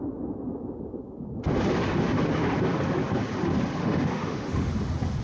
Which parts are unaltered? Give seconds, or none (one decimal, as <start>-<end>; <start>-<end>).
0.0-3.8; 4.7-5.2